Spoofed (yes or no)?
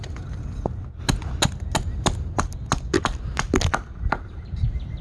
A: no